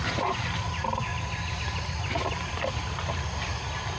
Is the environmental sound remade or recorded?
recorded